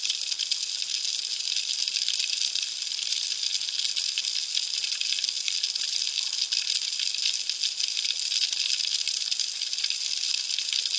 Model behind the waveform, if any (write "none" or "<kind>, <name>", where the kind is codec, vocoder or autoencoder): none